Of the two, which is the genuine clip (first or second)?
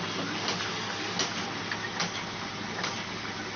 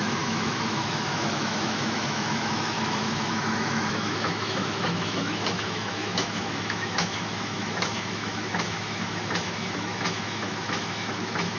first